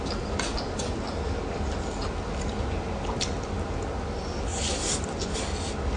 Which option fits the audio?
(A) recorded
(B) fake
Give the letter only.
A